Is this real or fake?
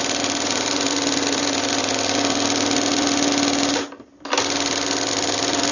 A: real